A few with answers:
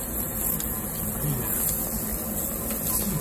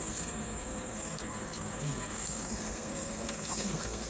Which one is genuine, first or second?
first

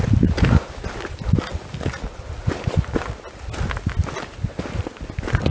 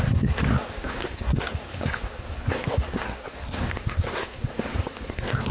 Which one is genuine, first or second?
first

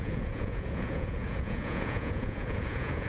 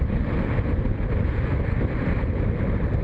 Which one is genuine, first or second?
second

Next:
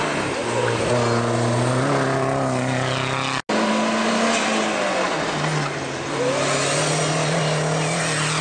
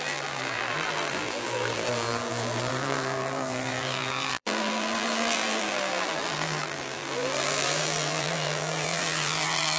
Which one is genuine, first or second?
first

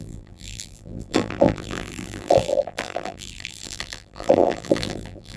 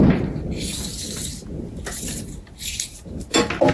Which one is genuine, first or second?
second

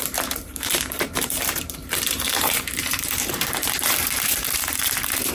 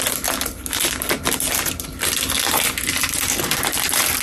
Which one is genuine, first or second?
second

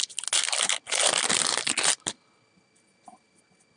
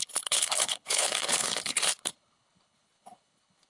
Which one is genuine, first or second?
first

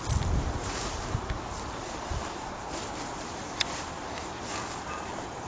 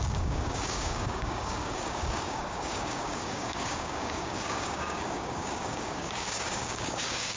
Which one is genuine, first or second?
first